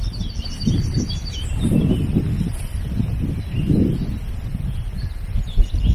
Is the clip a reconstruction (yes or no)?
no